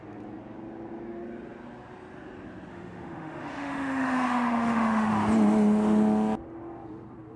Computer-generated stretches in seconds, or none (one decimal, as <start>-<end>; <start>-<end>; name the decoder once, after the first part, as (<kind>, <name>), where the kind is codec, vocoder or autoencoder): 2.7-5.1 (autoencoder, DAC-VAE)